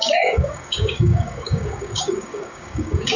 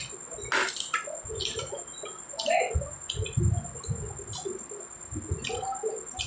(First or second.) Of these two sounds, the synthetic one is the first